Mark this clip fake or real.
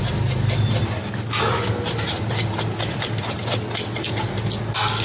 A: real